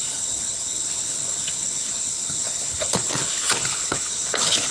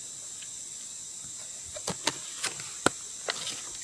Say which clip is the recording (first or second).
second